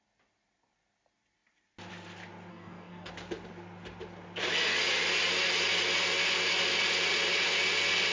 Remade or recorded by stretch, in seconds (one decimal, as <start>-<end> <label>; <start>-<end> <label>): 0.0-2.5 recorded; 2.5-3.1 remade; 3.1-8.1 recorded